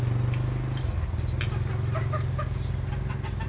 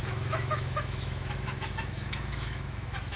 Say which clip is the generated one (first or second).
second